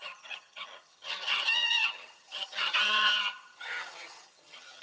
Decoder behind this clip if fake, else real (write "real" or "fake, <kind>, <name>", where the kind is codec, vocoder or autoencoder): fake, vocoder, HiFi-GAN